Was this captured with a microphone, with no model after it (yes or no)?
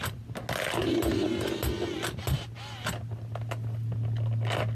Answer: yes